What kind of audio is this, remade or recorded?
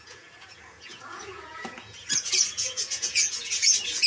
remade